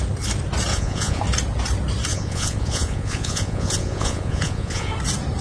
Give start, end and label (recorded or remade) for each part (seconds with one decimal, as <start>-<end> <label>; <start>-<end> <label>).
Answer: 0.0-0.7 recorded; 0.7-1.2 remade; 1.2-2.1 recorded; 2.1-4.9 remade; 4.9-5.4 recorded